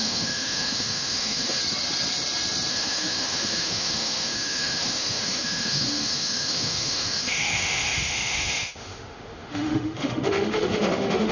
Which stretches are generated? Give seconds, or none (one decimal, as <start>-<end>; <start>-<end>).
0.0-1.6; 2.7-11.3